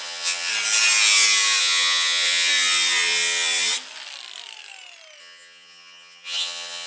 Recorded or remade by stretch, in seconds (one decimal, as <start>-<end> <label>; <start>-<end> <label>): 0.0-0.5 remade; 0.5-1.6 recorded; 1.6-2.5 remade; 2.5-5.2 recorded; 5.2-6.9 remade